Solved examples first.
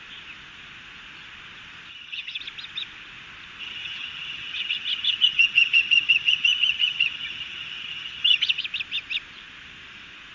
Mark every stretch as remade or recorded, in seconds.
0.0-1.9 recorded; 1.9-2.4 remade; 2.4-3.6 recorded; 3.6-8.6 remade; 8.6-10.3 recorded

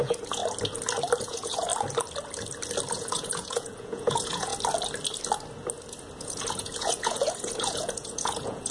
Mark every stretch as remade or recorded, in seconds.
0.0-0.4 remade; 0.4-1.2 recorded; 1.2-1.7 remade; 1.7-2.9 recorded; 2.9-4.5 remade; 4.5-6.2 recorded; 6.2-8.7 remade

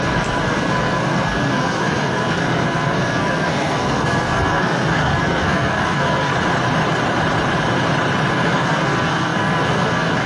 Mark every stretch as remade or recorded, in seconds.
0.0-6.3 remade; 6.3-8.3 recorded; 8.3-10.3 remade

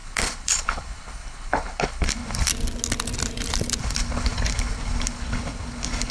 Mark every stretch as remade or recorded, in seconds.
0.0-2.5 remade; 2.5-3.8 recorded; 3.8-6.1 remade

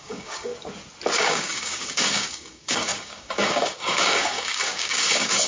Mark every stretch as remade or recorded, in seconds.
0.0-0.5 remade; 0.5-1.2 recorded; 1.2-5.5 remade